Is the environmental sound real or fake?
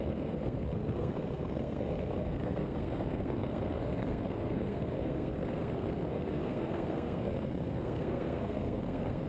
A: fake